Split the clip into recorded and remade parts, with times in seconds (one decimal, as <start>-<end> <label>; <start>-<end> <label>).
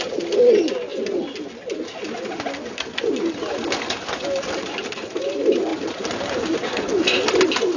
0.0-7.8 recorded